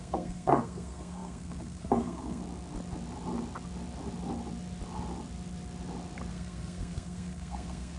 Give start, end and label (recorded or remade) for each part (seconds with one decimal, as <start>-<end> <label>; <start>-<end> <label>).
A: 0.0-2.4 remade; 2.4-6.3 recorded; 6.3-8.0 remade